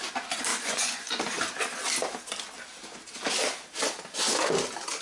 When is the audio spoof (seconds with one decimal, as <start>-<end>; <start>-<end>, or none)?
0.5-1.2